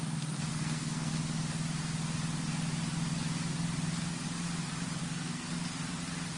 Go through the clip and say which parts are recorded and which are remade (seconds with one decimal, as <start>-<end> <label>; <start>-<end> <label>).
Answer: 0.0-0.5 recorded; 0.5-1.1 remade; 1.1-5.0 recorded; 5.0-5.5 remade; 5.5-6.4 recorded